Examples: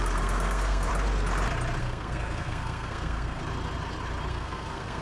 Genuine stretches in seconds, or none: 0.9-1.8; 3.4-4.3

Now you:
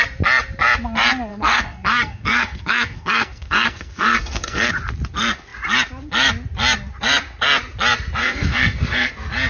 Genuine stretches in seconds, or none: 0.0-1.3; 4.7-8.2; 9.1-9.5